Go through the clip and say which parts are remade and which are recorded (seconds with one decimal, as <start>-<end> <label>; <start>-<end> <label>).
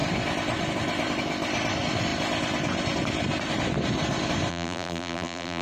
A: 0.0-4.5 recorded; 4.5-5.6 remade